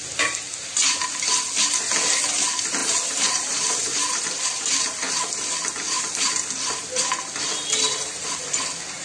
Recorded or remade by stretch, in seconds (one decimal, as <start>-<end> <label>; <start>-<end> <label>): 0.0-2.8 recorded; 2.8-5.3 remade; 5.3-9.0 recorded